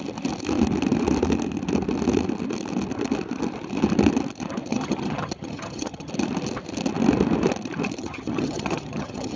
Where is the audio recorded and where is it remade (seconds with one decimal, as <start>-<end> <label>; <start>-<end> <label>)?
0.0-4.7 recorded; 4.7-6.1 remade; 6.1-8.0 recorded; 8.0-9.4 remade